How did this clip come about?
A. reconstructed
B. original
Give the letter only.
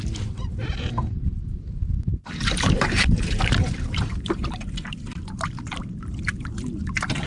A